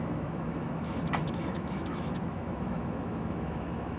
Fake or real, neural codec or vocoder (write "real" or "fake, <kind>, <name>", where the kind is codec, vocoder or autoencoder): fake, autoencoder, DAC-VAE